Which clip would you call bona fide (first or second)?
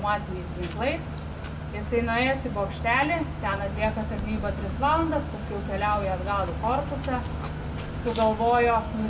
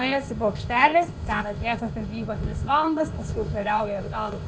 first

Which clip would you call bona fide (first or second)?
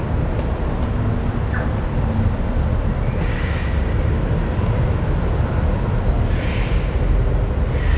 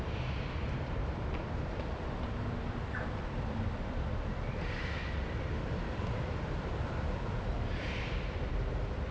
first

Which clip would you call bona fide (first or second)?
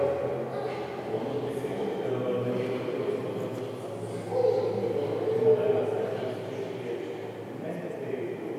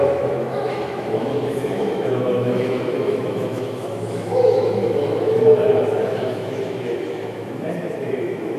first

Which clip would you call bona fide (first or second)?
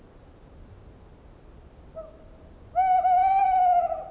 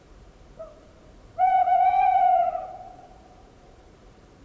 first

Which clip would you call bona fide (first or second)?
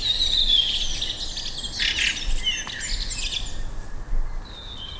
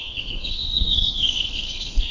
first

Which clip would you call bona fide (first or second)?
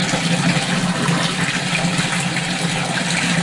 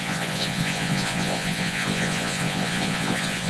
first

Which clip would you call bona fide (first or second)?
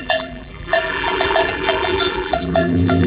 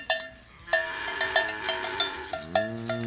second